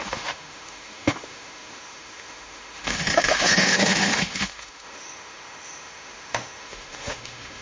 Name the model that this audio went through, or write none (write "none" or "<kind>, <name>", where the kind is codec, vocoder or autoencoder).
autoencoder, DAC-VAE